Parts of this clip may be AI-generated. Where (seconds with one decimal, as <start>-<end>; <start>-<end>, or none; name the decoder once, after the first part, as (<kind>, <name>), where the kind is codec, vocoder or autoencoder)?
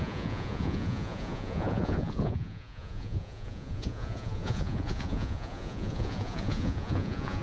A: 0.0-7.4 (vocoder, Vocos)